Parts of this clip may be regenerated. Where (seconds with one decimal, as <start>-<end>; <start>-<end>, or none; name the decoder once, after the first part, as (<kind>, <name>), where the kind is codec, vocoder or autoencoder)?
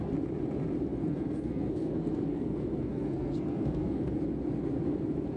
1.0-4.2 (codec, SNAC)